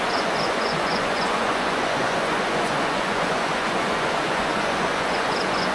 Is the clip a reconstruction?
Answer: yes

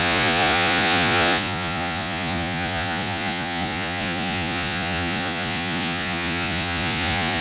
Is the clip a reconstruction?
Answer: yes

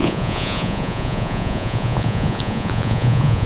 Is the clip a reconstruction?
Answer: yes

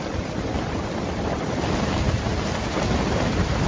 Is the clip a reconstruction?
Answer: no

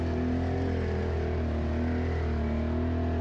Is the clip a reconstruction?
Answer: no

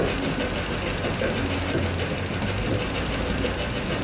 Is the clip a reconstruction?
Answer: no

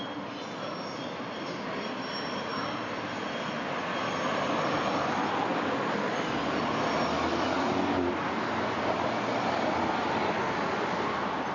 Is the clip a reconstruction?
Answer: no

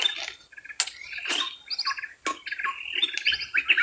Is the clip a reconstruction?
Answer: no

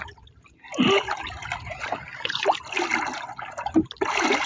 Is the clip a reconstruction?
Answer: no